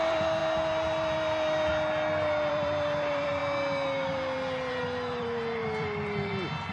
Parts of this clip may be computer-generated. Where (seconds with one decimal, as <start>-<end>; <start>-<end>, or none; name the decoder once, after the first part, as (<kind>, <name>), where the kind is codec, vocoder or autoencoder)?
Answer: 0.0-0.4 (vocoder, BigVGAN v2); 2.5-3.4; 4.7-6.7